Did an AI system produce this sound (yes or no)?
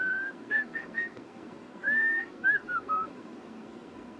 yes